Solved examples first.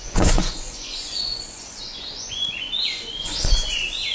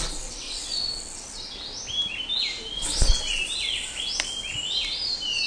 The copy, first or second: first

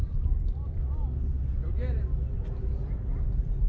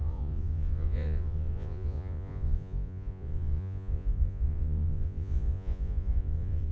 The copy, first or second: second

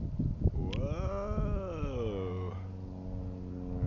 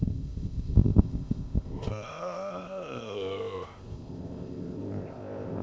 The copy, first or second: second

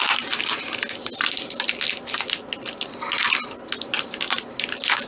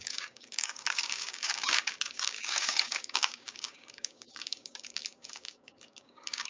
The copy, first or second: second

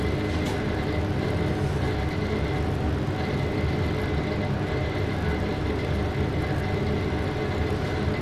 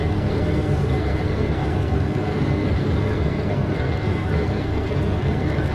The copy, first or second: second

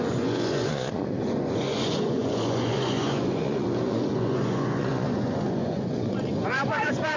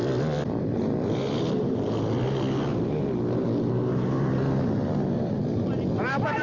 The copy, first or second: first